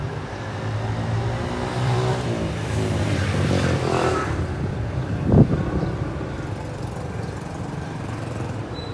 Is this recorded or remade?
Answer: remade